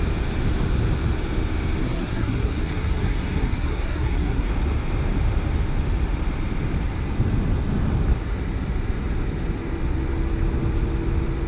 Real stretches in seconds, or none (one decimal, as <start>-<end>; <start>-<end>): 0.0-1.8; 4.5-11.5